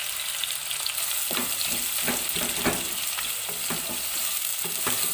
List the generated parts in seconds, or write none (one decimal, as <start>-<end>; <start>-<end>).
none